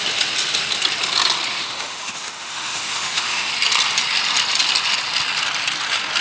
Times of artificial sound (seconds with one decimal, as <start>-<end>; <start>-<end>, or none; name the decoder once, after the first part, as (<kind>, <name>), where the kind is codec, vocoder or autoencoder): 1.5-3.5 (autoencoder, DAC-VAE)